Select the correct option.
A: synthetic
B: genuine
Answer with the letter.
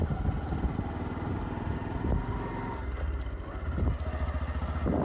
B